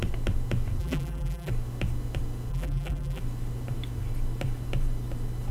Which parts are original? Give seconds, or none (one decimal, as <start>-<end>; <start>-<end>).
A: 0.0-0.8; 1.5-2.5; 3.2-5.5